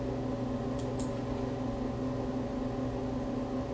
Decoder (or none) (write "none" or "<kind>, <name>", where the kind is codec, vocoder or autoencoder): none